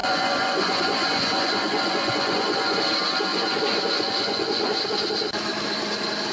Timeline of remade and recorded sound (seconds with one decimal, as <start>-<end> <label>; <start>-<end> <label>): 0.0-2.8 remade; 2.8-3.3 recorded; 3.3-5.0 remade; 5.0-6.3 recorded